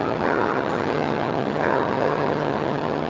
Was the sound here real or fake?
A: fake